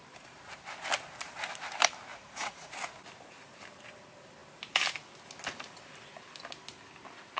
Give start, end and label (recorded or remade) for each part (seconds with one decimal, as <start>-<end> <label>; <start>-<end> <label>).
0.0-2.1 recorded; 2.1-2.7 remade; 2.7-7.4 recorded

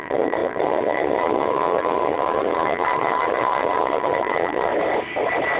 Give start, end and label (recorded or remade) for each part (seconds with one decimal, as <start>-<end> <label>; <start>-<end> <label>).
0.0-4.7 remade; 4.7-5.6 recorded

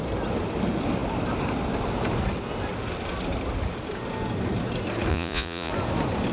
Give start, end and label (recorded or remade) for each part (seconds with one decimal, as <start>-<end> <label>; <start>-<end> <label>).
0.0-5.1 recorded; 5.1-5.7 remade; 5.7-6.3 recorded

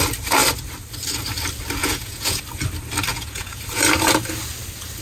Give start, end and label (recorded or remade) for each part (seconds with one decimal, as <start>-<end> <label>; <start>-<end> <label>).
0.0-1.8 recorded; 1.8-2.4 remade; 2.4-3.1 recorded; 3.1-3.6 remade; 3.6-5.0 recorded